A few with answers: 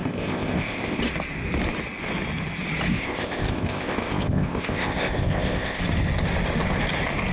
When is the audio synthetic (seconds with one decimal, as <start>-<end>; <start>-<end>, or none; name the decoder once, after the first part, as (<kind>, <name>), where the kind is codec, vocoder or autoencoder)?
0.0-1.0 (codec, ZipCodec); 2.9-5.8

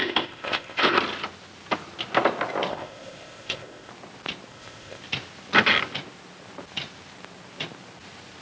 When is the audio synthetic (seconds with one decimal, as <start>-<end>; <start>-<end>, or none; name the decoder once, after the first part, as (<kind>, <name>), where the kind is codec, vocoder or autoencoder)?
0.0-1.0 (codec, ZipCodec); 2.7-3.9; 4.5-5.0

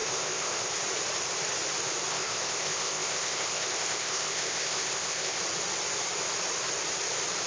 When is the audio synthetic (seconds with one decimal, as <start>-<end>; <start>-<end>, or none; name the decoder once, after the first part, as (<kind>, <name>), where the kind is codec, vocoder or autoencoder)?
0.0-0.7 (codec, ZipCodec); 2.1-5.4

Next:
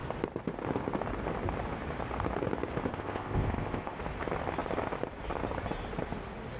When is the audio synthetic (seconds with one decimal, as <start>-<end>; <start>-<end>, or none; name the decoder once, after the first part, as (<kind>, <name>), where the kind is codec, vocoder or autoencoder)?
2.9-4.0 (codec, ZipCodec)

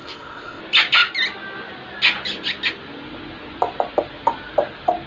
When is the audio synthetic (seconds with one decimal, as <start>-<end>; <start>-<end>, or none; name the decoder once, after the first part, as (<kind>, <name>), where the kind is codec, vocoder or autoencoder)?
0.0-0.6 (codec, ZipCodec)

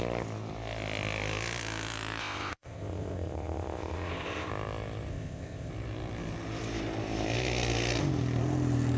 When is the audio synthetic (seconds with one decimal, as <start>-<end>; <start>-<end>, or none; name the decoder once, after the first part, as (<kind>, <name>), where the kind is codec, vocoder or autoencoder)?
2.2-4.5 (codec, ZipCodec); 5.1-5.7

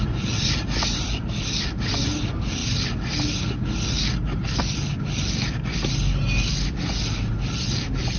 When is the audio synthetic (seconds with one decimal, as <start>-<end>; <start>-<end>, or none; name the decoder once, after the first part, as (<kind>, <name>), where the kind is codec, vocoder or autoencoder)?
none

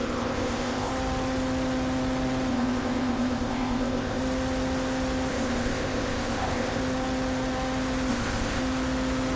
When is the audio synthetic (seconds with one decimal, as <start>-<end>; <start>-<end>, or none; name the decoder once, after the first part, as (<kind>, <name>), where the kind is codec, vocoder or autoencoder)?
0.0-0.9 (codec, ZipCodec); 2.5-4.2; 5.3-6.8; 8.1-8.6